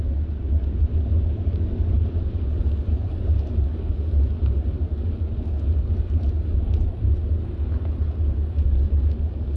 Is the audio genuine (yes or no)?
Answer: yes